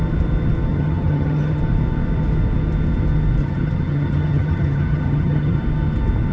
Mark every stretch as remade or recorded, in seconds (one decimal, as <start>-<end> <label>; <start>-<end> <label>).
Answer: 0.0-0.7 recorded; 0.7-1.6 remade; 1.6-3.4 recorded; 3.4-5.6 remade; 5.6-6.3 recorded